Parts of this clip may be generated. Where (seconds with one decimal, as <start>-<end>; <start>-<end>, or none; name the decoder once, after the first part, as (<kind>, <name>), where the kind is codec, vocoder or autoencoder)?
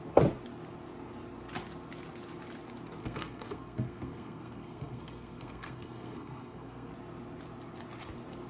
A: 3.0-6.9 (codec, SNAC)